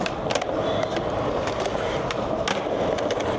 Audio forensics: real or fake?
real